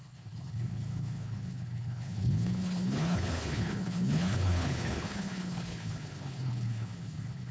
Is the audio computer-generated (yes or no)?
yes